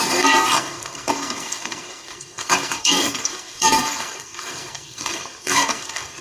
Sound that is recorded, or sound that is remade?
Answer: remade